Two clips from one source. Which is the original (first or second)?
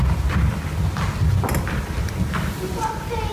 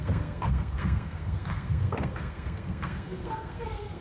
first